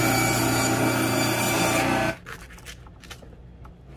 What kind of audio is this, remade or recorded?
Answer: recorded